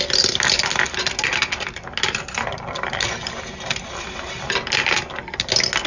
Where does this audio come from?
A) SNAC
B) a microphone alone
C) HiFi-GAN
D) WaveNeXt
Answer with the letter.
B